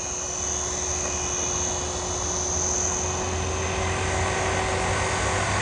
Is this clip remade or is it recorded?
recorded